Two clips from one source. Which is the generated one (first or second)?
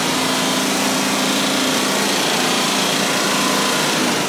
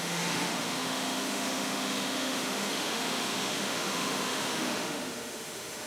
second